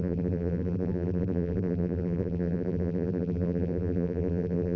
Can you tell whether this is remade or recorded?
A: remade